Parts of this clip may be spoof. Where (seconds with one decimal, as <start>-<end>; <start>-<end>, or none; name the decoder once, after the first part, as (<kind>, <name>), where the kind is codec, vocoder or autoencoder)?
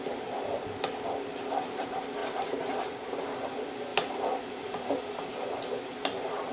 none